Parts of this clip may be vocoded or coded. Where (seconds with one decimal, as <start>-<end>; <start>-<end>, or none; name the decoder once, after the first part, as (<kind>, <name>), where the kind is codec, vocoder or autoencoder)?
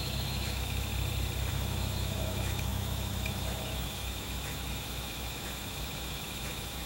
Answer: 0.0-0.9 (autoencoder, DAC-VAE); 1.5-6.9